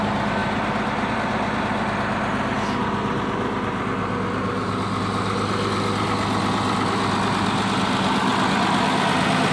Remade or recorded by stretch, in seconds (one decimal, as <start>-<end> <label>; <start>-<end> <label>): 0.0-9.5 recorded